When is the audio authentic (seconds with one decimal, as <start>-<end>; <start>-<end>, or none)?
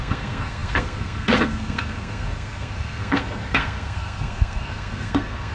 none